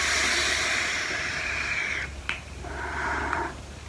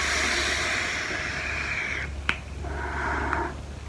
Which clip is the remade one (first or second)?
first